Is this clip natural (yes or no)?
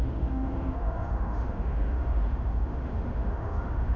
no